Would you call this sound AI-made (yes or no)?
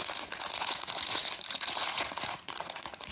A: yes